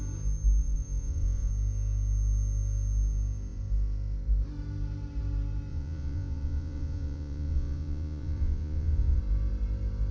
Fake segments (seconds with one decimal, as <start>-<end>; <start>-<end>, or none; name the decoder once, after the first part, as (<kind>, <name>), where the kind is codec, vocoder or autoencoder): 0.6-1.5 (vocoder, Vocos); 5.7-9.2

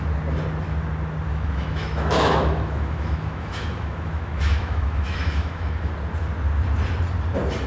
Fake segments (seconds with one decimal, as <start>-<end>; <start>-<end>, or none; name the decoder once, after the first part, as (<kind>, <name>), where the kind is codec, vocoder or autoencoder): 1.3-5.9 (autoencoder, DAC-VAE)

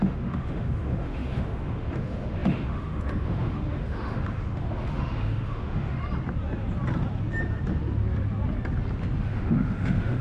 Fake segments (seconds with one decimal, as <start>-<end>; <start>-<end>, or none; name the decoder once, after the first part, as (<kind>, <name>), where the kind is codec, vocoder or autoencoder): 0.0-6.0 (autoencoder, DAC-VAE); 9.2-10.2

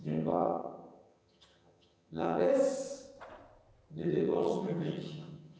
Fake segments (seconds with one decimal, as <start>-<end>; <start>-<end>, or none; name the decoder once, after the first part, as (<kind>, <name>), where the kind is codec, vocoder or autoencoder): 0.0-2.5 (vocoder, HiFi-GAN); 3.9-5.6

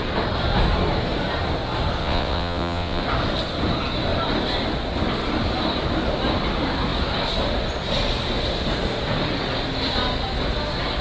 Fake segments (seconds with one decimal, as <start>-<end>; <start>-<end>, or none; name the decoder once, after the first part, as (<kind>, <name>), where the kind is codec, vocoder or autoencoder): 2.0-3.0 (vocoder, WaveNeXt)

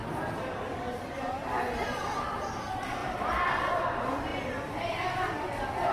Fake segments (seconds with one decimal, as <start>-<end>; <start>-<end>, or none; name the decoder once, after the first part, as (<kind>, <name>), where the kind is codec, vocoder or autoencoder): 3.0-3.5 (vocoder, BigVGAN v2)

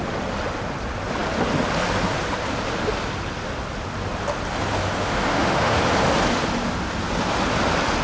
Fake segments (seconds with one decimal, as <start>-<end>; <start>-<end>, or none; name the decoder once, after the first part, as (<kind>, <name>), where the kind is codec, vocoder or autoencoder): 5.0-5.8 (autoencoder, DAC-VAE)

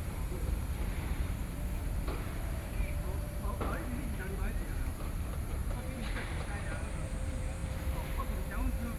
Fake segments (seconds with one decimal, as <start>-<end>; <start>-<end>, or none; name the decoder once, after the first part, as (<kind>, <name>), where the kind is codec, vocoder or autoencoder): 0.0-9.0 (vocoder, BigVGAN v2)